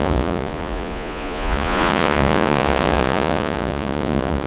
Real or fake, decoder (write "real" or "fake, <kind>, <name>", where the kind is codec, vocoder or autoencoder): fake, vocoder, Vocos